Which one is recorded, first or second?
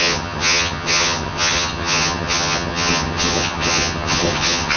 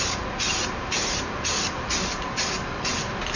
second